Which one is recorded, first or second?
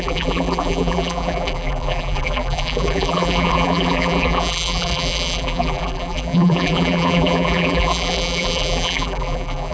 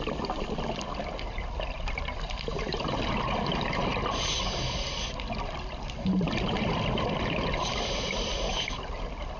second